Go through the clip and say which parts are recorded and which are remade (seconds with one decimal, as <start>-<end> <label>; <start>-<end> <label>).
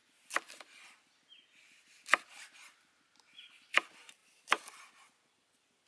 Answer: 0.0-5.9 recorded